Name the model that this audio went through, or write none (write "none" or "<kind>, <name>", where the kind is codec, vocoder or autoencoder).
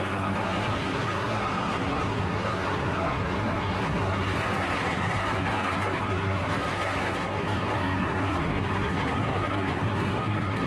codec, SNAC